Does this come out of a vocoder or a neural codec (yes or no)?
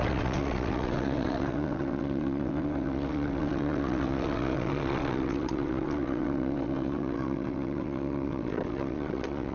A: yes